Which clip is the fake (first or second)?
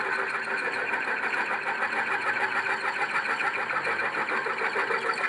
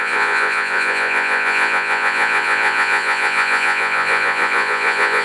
second